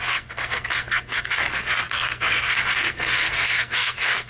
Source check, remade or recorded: remade